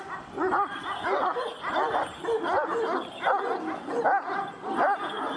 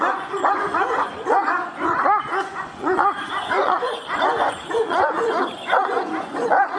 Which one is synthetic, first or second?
second